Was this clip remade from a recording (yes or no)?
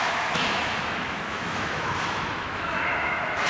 yes